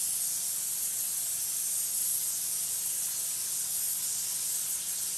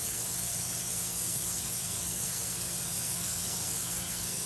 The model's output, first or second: second